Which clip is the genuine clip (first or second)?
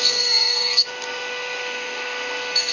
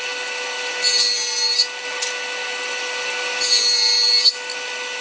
second